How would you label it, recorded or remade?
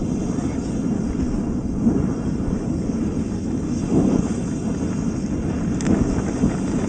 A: recorded